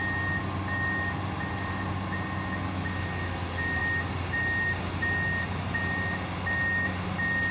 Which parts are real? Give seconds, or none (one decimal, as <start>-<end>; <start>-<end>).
0.0-7.5